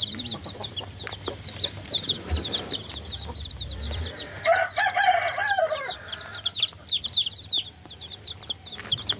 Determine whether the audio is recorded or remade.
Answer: remade